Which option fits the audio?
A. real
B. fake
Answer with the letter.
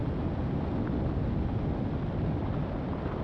A